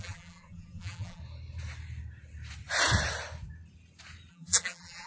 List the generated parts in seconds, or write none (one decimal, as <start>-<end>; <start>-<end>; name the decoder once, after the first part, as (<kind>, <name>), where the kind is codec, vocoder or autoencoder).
0.0-1.2 (vocoder, BigVGAN v2); 4.3-5.1